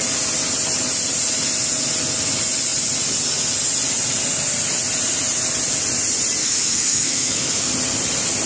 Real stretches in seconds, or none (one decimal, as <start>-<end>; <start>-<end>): 0.0-6.4; 7.7-8.5